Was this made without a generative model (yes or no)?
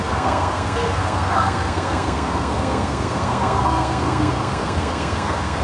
no